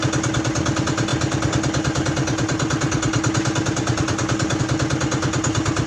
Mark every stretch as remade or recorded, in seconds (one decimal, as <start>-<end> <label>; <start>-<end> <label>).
0.0-5.9 recorded